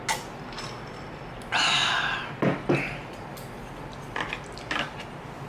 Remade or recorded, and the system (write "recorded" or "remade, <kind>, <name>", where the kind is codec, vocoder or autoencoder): recorded